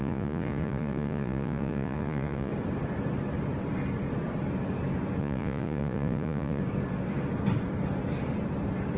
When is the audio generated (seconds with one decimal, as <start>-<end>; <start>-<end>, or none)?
0.0-2.5; 5.2-6.6